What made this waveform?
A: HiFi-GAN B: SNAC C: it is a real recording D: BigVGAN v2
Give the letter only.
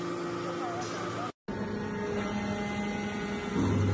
C